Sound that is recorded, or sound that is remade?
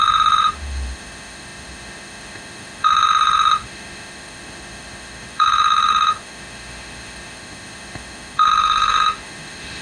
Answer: remade